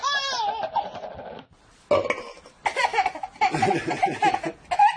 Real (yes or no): yes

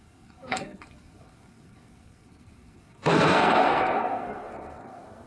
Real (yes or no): no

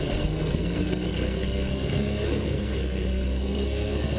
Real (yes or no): no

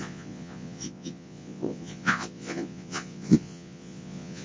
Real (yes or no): no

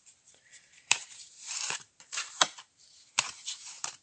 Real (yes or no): no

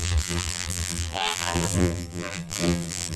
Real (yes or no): no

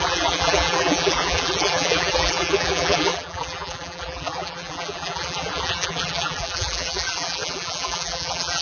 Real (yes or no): no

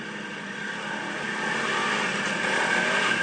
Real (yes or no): yes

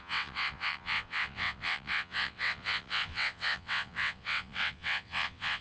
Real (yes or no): no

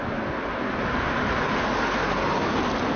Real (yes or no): yes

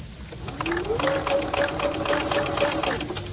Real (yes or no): yes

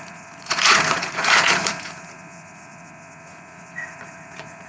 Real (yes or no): no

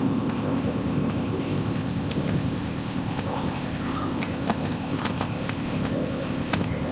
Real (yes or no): no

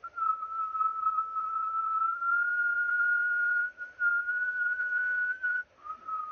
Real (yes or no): no